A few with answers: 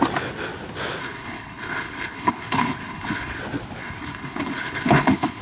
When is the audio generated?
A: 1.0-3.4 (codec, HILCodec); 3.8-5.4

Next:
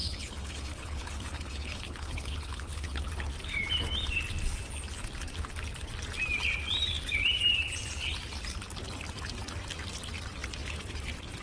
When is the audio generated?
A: 0.0-3.1 (codec, HILCodec)

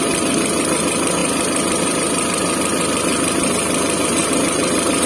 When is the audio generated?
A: none

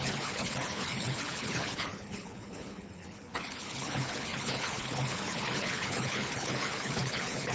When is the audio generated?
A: 0.0-7.5 (codec, HILCodec)

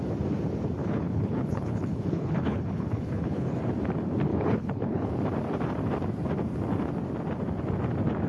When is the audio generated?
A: 0.8-3.6 (codec, HILCodec); 4.3-5.1